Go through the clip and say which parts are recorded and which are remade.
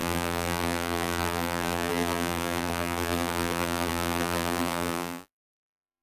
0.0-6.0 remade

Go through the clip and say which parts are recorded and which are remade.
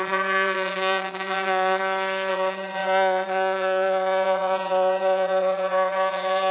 0.0-1.8 remade; 1.8-2.3 recorded; 2.3-6.5 remade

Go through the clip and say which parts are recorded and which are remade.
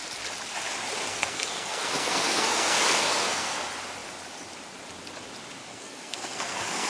0.0-1.1 recorded; 1.1-3.6 remade; 3.6-5.6 recorded; 5.6-6.9 remade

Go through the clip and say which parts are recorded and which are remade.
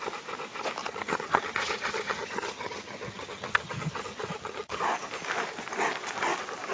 0.0-0.8 recorded; 0.8-4.8 remade; 4.8-6.7 recorded